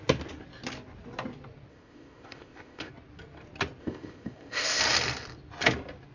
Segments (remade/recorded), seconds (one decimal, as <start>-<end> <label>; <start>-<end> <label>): 0.0-1.7 recorded; 1.7-2.9 remade; 2.9-3.8 recorded; 3.8-4.8 remade; 4.8-6.1 recorded